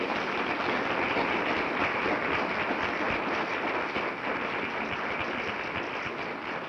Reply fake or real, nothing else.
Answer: real